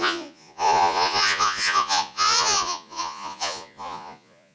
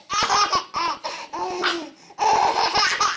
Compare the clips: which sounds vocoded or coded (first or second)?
first